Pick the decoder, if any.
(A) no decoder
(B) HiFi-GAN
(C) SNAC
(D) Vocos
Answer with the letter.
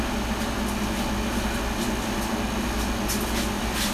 A